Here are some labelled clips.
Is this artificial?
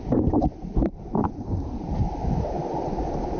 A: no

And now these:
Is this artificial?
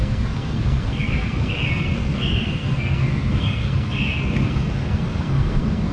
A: yes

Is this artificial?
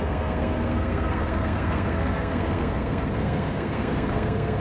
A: yes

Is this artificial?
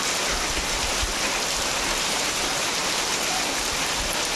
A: no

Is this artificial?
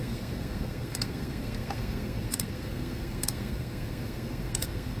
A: yes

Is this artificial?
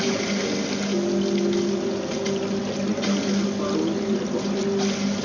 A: no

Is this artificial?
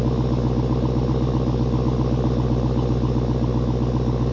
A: no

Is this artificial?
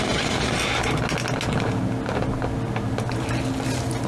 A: no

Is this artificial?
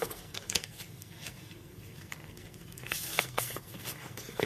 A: yes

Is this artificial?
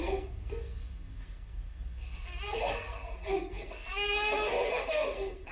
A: yes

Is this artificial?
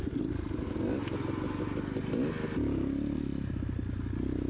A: no